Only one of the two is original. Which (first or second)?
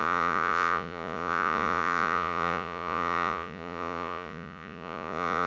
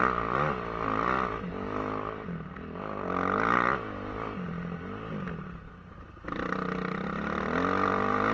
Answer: second